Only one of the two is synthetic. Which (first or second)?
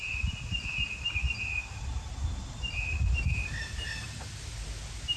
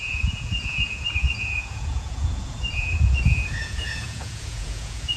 second